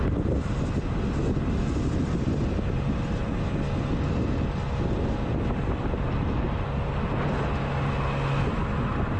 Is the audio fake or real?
real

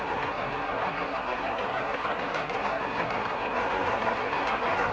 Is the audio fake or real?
fake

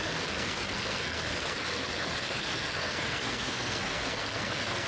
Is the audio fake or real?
fake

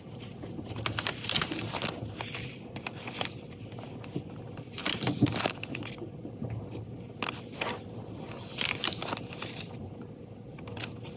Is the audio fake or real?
real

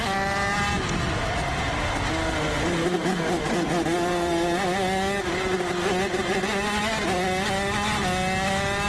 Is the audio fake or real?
real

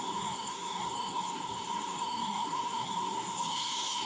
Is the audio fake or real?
fake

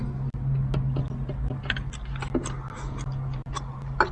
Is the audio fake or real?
real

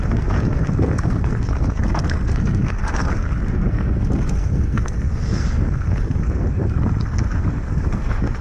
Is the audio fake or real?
fake